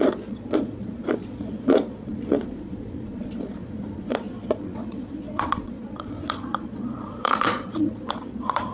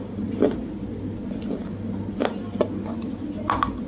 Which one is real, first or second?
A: second